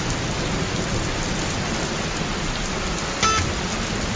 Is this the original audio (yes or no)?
yes